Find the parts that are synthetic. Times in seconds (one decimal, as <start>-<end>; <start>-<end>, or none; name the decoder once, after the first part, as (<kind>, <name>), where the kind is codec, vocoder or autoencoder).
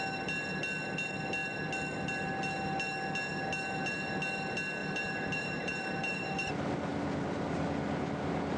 4.8-6.5 (vocoder, BigVGAN v2)